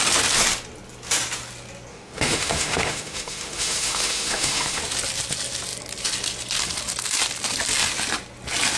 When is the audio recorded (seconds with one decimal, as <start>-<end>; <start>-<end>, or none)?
0.0-1.9; 4.8-8.8